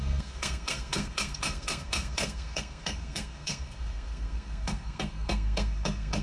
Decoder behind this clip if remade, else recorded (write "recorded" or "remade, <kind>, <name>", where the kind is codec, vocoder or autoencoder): remade, codec, SNAC